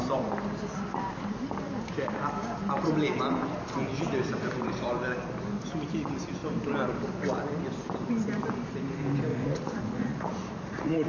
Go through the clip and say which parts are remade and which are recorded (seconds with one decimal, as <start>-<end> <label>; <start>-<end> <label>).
0.0-9.3 recorded; 9.3-11.1 remade